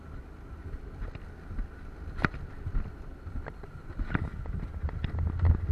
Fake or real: real